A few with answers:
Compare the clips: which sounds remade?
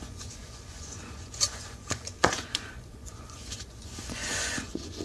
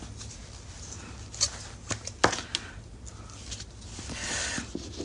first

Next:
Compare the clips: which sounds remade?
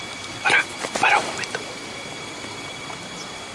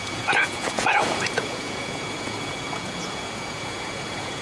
second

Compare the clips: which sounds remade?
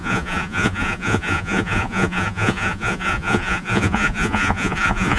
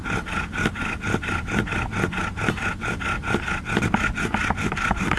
first